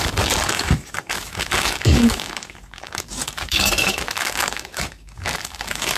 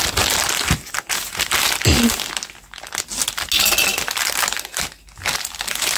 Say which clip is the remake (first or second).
first